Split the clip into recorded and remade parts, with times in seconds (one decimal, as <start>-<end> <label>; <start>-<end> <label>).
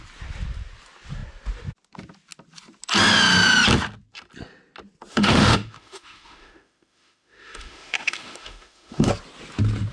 0.0-5.1 recorded; 5.1-9.1 remade; 9.1-9.9 recorded